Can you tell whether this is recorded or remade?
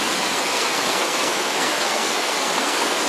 remade